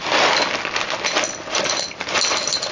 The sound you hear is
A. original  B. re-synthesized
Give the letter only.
A